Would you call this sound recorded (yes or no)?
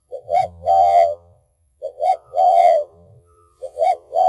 no